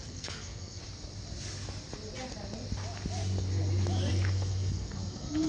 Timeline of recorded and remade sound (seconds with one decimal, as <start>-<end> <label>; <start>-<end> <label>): 0.0-0.8 remade; 0.8-4.1 recorded; 4.1-5.5 remade